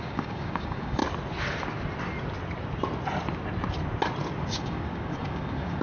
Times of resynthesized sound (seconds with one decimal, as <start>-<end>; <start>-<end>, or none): 0.0-1.0; 4.5-5.8